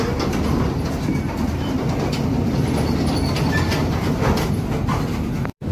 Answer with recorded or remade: recorded